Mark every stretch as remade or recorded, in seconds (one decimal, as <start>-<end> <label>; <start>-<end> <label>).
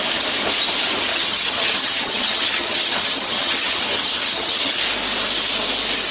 0.0-1.1 recorded; 1.1-4.8 remade; 4.8-6.1 recorded